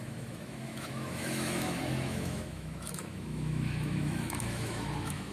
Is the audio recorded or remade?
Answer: remade